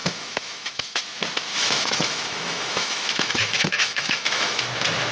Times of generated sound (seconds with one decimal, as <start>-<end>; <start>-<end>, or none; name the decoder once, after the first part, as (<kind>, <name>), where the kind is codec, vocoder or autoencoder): 0.0-1.0 (autoencoder, DAC-VAE); 1.5-4.6